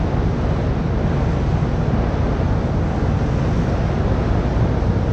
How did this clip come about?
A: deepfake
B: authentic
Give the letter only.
B